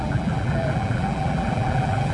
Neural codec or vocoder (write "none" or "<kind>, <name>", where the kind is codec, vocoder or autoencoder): vocoder, BigVGAN v2